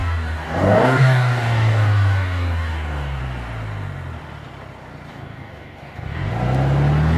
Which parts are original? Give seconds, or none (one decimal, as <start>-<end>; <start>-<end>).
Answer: 3.2-5.1; 6.3-7.2